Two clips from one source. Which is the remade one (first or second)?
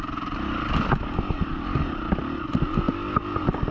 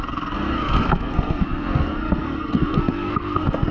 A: second